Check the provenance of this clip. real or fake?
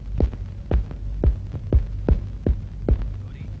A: real